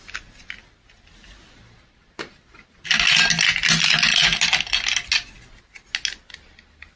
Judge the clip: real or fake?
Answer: real